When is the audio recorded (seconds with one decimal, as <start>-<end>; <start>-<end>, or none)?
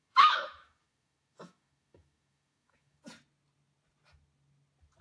3.0-5.0